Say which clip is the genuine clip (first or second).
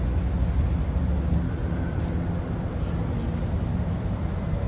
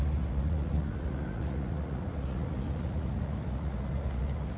first